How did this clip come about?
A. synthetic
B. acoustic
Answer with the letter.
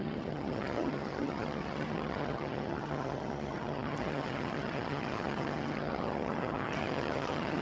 A